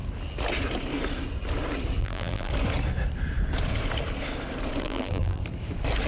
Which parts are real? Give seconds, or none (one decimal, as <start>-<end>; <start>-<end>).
0.0-2.0; 2.5-4.8; 5.4-6.1

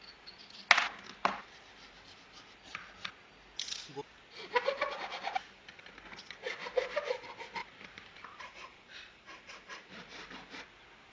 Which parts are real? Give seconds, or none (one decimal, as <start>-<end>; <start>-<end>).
0.0-7.6; 10.6-11.1

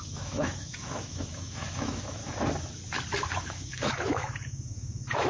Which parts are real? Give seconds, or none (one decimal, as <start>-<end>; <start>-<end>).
2.2-3.3

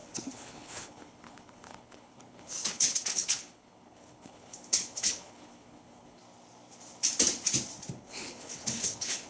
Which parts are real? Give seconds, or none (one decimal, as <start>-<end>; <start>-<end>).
6.2-7.9

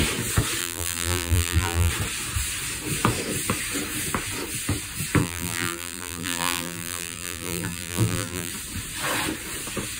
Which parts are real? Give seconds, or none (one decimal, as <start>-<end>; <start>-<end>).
0.0-0.6; 1.9-5.2; 8.5-10.0

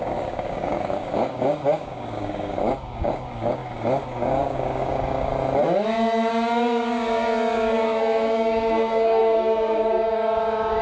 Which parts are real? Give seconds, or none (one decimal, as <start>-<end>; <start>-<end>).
5.3-6.3

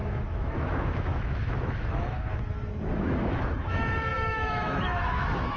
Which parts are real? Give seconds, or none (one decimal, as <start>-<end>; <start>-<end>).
none

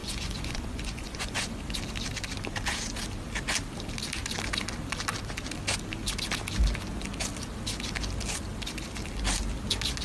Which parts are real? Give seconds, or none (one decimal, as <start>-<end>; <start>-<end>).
1.6-10.0